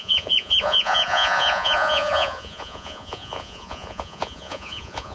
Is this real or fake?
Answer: fake